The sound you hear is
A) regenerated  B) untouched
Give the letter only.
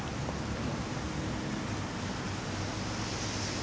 B